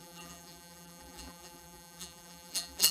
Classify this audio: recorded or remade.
remade